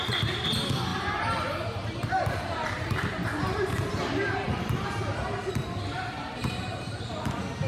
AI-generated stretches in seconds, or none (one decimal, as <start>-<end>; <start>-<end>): 0.9-5.5; 6.4-7.0